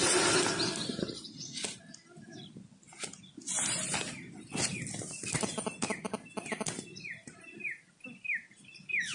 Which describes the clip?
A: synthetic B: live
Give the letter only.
B